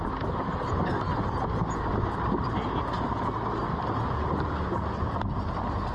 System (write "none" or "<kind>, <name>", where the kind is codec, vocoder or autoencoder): none